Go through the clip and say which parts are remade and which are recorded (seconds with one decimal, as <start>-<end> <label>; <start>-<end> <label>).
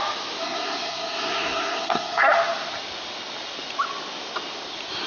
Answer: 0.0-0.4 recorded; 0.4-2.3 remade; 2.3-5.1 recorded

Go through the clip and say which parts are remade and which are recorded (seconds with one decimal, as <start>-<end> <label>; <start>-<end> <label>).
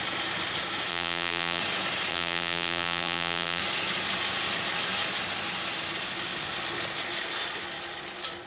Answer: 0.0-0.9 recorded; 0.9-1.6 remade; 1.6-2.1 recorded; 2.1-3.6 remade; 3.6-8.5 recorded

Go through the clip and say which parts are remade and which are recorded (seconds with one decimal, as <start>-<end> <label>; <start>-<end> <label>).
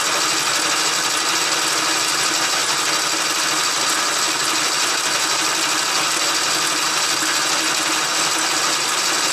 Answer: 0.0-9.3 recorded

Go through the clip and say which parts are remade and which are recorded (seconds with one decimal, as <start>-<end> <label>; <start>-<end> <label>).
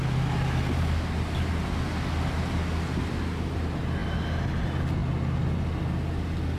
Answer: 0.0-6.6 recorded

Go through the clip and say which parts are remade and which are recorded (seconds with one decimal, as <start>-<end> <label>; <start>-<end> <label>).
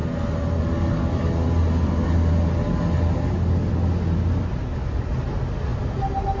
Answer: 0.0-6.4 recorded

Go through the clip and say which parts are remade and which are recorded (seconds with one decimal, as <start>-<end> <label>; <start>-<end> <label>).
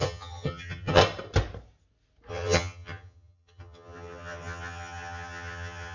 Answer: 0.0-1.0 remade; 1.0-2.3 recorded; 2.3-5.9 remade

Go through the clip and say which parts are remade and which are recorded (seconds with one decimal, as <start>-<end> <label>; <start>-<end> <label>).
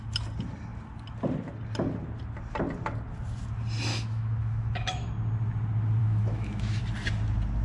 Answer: 0.0-3.9 recorded; 3.9-5.1 remade; 5.1-6.0 recorded; 6.0-6.8 remade; 6.8-7.6 recorded